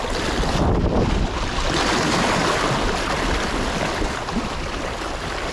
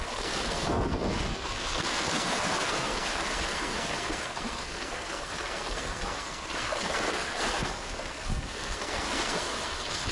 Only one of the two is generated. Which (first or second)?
second